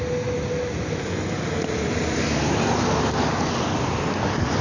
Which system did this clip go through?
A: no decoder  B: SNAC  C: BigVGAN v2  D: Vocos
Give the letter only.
A